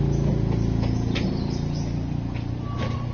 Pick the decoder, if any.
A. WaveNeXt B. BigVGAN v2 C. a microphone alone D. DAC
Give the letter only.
C